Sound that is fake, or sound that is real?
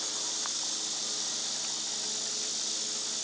real